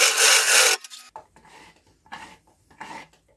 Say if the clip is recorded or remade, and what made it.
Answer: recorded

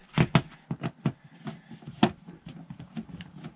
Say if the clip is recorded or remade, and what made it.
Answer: recorded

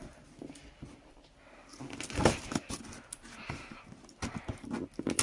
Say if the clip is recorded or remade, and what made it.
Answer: recorded